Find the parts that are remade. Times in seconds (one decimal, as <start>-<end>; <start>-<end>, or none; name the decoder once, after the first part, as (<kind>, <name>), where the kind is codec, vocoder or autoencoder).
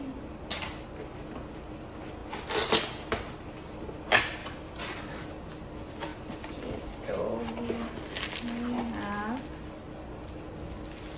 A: none